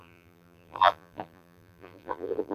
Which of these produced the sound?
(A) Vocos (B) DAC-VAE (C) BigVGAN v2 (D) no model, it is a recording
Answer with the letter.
C